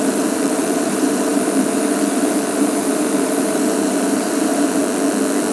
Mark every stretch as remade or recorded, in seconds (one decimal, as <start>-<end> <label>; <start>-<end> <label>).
0.0-4.8 remade; 4.8-5.5 recorded